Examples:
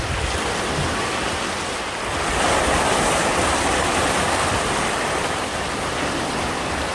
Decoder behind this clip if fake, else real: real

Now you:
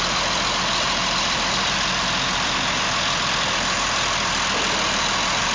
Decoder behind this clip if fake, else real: real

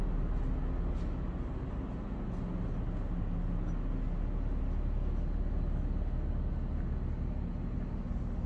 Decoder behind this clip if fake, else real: real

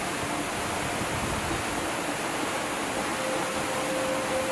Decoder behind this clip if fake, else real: real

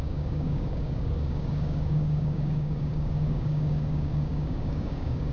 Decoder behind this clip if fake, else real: fake, codec, DAC